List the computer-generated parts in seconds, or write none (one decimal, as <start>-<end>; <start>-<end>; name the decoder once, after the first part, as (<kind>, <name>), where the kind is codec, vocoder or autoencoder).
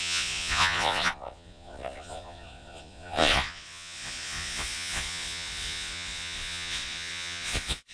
0.0-7.9 (vocoder, Vocos)